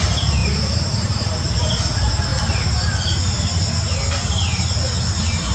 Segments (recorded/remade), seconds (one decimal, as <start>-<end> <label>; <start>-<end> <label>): 0.0-0.4 recorded; 0.4-1.3 remade; 1.3-5.5 recorded